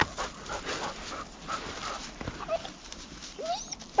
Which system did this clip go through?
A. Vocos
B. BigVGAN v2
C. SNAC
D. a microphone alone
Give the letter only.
B